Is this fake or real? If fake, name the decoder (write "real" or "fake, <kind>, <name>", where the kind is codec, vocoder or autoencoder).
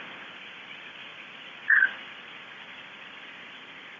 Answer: real